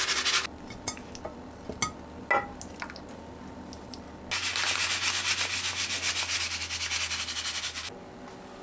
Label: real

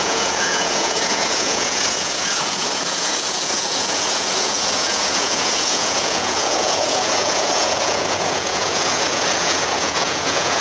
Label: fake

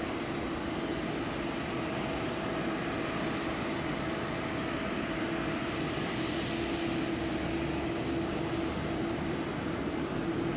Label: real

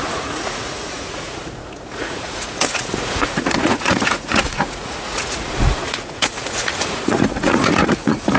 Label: fake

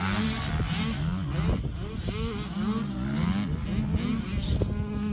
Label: real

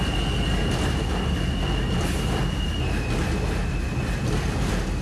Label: real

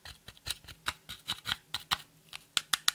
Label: real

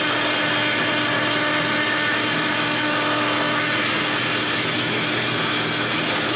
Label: real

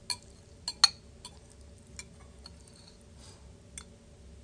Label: real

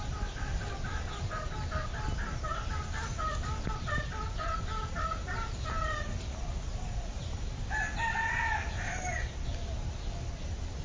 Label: real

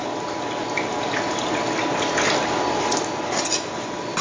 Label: real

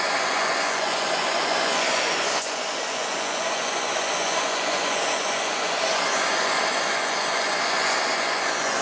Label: fake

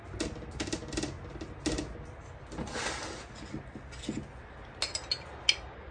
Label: real